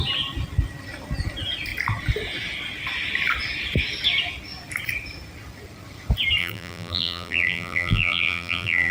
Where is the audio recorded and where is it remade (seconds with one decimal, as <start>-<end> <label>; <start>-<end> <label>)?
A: 0.0-6.4 recorded; 6.4-8.9 remade